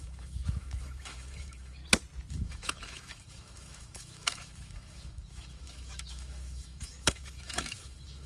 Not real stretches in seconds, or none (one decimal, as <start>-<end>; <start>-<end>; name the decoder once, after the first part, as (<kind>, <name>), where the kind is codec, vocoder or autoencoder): 0.0-1.8 (autoencoder, DAC-VAE); 2.3-8.3